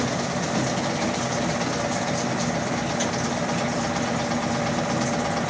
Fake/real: real